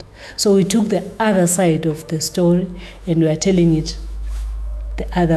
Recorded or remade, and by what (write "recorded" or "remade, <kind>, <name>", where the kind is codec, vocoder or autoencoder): remade, autoencoder, DAC-VAE